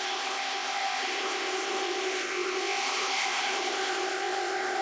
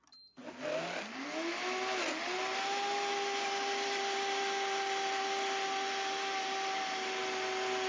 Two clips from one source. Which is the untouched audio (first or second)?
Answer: second